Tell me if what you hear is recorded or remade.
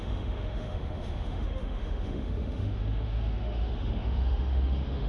remade